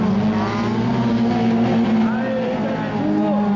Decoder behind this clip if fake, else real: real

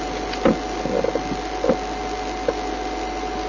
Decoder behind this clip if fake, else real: real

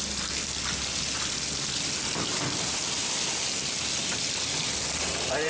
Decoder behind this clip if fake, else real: real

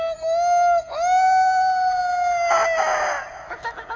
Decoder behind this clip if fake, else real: real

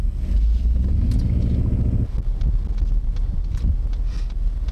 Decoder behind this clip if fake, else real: real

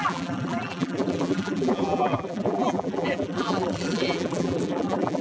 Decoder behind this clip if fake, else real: fake, vocoder, BigVGAN v2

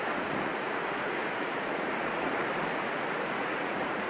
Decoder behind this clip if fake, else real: fake, vocoder, Vocos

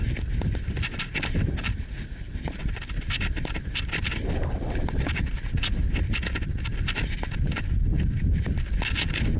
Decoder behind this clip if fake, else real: real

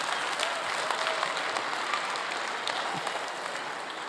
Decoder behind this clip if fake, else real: real